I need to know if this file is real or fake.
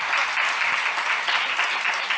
real